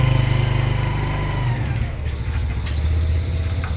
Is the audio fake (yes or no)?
no